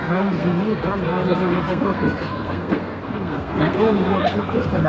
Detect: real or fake fake